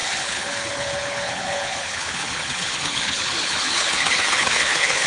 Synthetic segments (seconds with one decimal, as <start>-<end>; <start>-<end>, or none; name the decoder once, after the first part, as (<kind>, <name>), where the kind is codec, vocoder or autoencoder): 0.0-5.1 (codec, HILCodec)